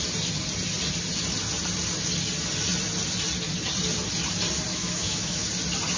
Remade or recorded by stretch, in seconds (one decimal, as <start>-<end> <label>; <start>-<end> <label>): 0.0-4.7 recorded; 4.7-5.5 remade; 5.5-6.0 recorded